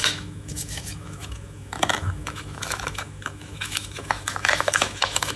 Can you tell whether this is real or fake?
fake